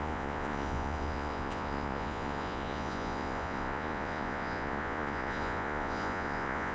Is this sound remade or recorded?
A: remade